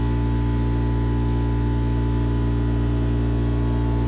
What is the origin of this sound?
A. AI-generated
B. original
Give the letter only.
B